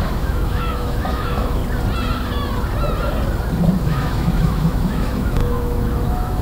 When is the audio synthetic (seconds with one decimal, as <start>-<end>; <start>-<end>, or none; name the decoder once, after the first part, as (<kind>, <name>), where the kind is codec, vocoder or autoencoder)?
0.0-1.6 (autoencoder, DAC-VAE); 3.8-6.4